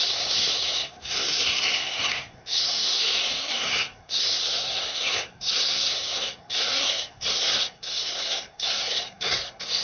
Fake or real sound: fake